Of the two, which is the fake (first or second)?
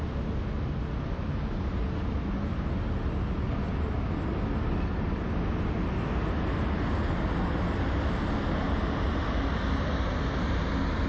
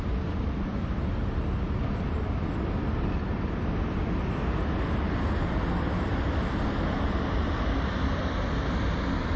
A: second